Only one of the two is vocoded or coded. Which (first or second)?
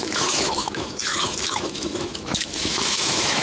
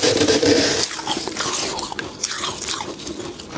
first